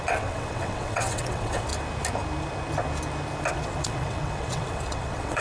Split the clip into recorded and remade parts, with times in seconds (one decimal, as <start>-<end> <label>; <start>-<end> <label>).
0.0-1.7 remade; 1.7-3.5 recorded; 3.5-5.4 remade